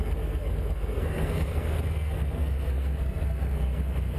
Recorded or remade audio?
remade